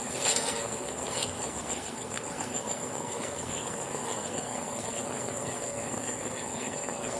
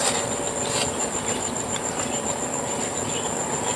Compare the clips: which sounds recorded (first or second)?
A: second